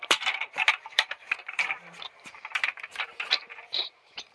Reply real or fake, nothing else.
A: fake